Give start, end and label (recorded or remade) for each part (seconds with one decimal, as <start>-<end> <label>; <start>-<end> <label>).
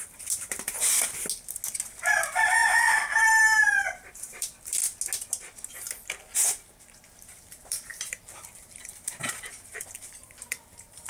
0.0-1.0 remade; 1.0-2.2 recorded; 2.2-2.6 remade; 2.6-3.4 recorded; 3.4-4.8 remade; 4.8-7.4 recorded; 7.4-11.1 remade